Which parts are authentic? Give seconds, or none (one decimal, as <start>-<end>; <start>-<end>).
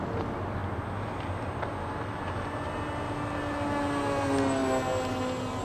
0.0-5.6